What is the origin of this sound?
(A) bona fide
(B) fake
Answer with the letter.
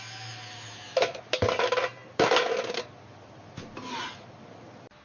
A